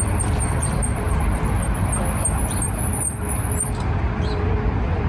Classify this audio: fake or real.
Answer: fake